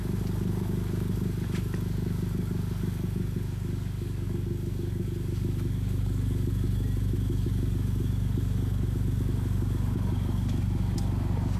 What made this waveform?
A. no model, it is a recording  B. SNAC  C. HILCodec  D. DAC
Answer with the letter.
D